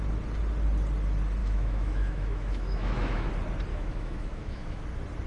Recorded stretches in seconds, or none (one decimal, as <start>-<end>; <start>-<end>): 0.0-1.4; 3.3-3.7; 4.8-5.3